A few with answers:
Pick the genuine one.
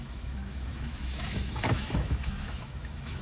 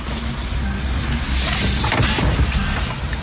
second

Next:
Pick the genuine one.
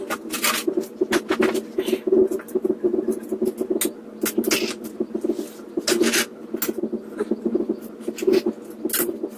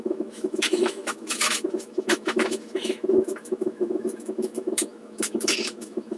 first